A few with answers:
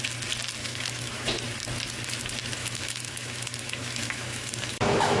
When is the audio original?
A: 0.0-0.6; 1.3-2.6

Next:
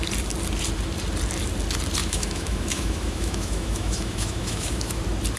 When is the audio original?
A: 0.0-2.0; 5.0-5.4

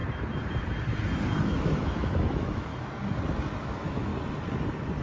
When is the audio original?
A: 0.0-1.4; 2.7-3.6; 4.1-5.0